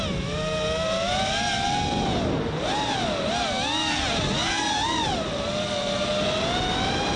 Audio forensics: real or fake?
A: real